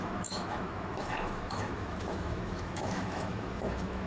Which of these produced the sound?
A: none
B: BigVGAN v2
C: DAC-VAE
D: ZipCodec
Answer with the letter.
C